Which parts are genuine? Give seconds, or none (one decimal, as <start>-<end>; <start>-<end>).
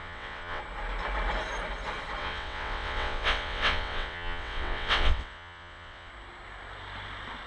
0.6-2.2; 6.1-7.5